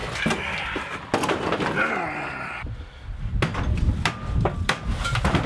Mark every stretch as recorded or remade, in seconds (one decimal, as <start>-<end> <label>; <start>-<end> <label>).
0.0-5.5 recorded

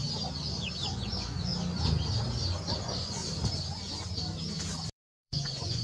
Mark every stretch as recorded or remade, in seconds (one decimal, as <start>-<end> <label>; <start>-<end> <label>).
0.0-0.9 recorded; 0.9-1.5 remade; 1.5-2.8 recorded; 2.8-3.2 remade; 3.2-4.9 recorded; 4.9-5.8 remade

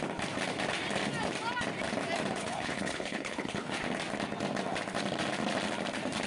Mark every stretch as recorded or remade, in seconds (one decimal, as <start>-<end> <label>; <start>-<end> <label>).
0.0-2.4 recorded; 2.4-3.8 remade; 3.8-6.3 recorded

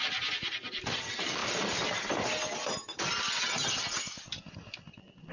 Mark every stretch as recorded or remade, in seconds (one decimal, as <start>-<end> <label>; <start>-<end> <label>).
0.0-5.3 recorded

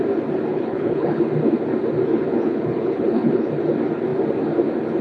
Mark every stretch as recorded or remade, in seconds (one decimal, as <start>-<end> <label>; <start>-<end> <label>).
0.0-0.5 recorded; 0.5-1.2 remade; 1.2-2.1 recorded; 2.1-3.5 remade; 3.5-5.0 recorded

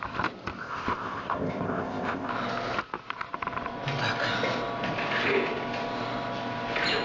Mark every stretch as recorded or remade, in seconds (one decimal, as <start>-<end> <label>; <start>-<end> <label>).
0.0-0.6 recorded; 0.6-2.3 remade; 2.3-7.0 recorded

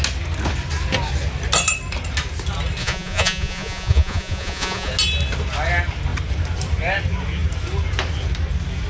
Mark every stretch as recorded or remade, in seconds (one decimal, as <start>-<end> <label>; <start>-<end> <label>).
0.0-2.8 recorded; 2.8-4.9 remade; 4.9-8.9 recorded